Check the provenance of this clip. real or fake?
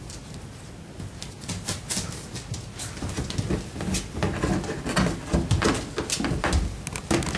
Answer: real